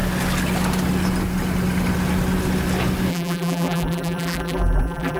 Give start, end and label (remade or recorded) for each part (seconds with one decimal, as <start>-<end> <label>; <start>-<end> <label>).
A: 0.0-3.1 recorded; 3.1-5.2 remade

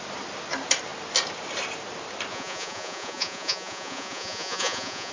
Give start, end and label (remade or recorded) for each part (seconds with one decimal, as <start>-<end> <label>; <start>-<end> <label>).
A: 0.0-2.3 recorded; 2.3-5.1 remade

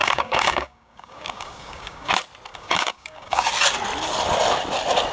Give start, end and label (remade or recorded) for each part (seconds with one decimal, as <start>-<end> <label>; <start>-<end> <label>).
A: 0.0-2.1 remade; 2.1-2.5 recorded; 2.5-3.5 remade; 3.5-5.1 recorded

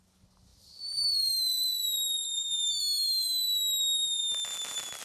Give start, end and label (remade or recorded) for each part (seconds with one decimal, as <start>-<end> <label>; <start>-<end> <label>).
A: 0.0-0.5 recorded; 0.5-2.8 remade; 2.8-5.0 recorded